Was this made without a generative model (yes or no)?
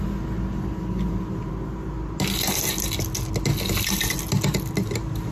yes